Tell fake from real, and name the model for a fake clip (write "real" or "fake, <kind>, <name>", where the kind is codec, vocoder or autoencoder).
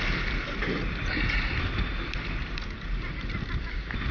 real